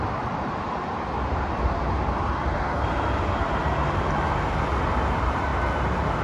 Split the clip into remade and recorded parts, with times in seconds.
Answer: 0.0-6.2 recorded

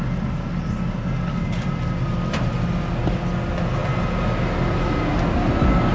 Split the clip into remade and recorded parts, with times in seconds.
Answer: 0.0-5.9 recorded

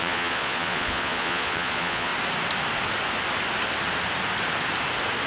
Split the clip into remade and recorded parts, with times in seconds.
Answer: 0.0-2.1 remade; 2.1-5.3 recorded

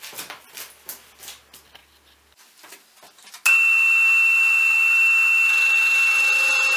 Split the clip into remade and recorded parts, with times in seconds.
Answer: 0.0-6.8 recorded

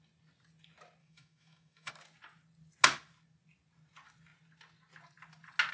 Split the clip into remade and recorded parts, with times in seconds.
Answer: 0.0-1.0 recorded; 1.0-1.9 remade; 1.9-5.7 recorded